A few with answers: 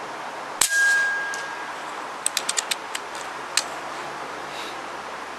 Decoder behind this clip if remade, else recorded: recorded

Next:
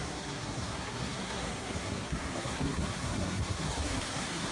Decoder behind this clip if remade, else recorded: remade, codec, SNAC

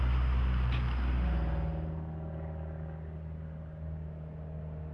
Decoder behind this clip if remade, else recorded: recorded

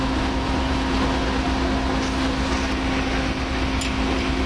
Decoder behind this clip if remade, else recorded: recorded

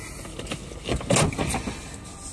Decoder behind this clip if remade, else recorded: recorded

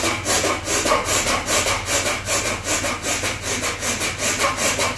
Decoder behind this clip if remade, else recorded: recorded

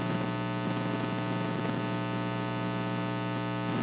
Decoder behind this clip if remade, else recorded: recorded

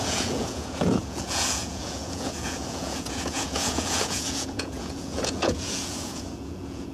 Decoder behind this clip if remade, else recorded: remade, vocoder, Vocos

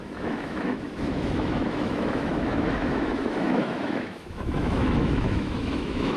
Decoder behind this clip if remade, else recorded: remade, autoencoder, DAC-VAE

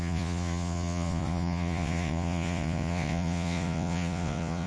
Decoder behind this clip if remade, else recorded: remade, vocoder, Vocos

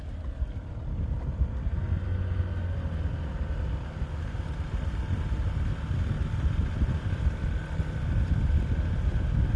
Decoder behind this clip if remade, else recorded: recorded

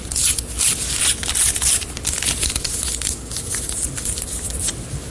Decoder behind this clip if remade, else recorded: recorded